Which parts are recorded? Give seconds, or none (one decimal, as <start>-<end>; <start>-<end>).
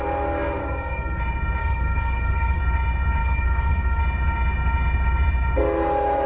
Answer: 0.0-0.6; 1.2-1.6; 2.6-3.2; 4.0-6.3